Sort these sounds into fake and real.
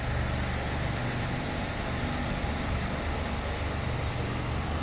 real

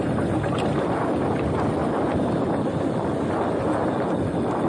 real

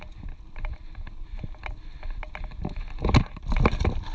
real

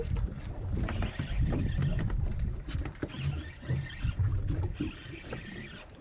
real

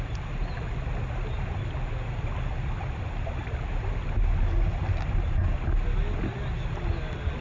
real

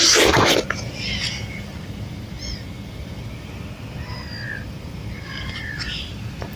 real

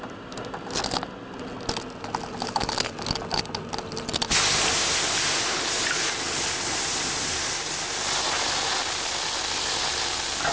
real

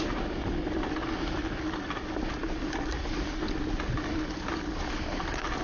real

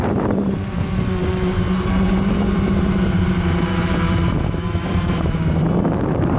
fake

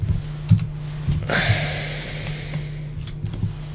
real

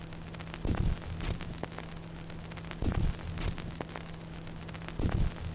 real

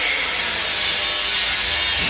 real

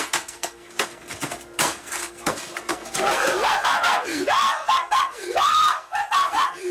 fake